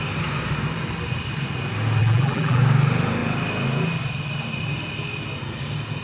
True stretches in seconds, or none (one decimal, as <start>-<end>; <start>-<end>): 0.0-2.0; 2.6-6.0